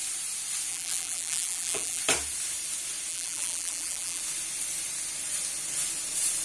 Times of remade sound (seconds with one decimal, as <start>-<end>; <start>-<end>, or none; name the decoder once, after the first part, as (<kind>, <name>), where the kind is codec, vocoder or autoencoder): 0.7-2.0 (vocoder, BigVGAN v2); 3.1-4.2